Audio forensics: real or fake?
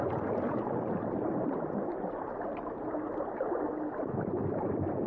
real